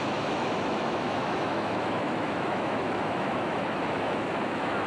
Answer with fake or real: fake